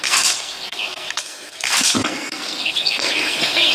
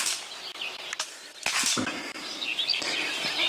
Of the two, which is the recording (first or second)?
second